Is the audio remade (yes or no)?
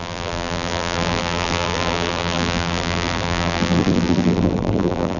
yes